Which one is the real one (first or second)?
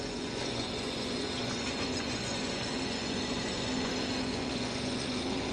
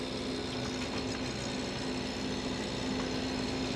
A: second